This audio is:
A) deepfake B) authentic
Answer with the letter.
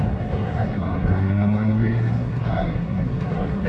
A